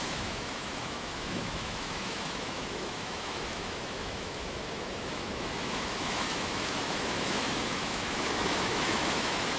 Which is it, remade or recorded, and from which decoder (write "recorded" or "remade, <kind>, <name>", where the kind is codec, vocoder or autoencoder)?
remade, autoencoder, DAC-VAE